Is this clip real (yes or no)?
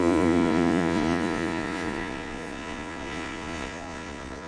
no